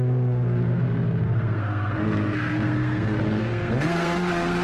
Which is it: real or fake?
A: fake